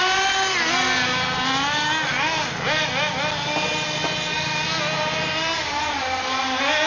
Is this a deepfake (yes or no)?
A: no